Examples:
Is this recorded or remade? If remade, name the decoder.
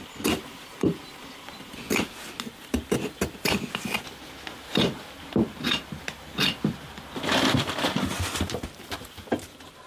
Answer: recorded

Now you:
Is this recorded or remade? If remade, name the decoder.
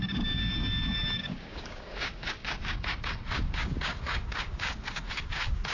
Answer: remade, codec, DAC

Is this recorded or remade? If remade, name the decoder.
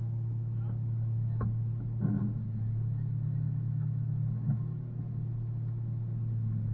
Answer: recorded